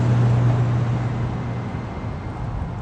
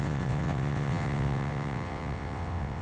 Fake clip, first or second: second